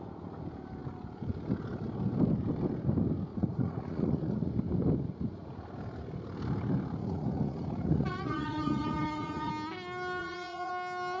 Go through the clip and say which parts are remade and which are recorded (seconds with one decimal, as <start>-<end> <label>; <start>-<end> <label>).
0.0-3.3 recorded; 3.3-4.5 remade; 4.5-7.0 recorded; 7.0-9.5 remade; 9.5-10.2 recorded; 10.2-10.7 remade; 10.7-11.2 recorded